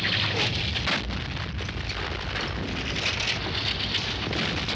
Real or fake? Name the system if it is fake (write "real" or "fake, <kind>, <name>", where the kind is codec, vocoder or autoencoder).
fake, vocoder, BigVGAN v2